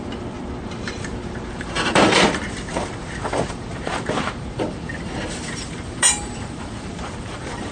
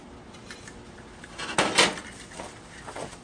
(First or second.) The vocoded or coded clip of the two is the first